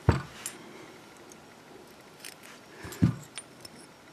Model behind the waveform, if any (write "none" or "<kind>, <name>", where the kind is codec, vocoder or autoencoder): none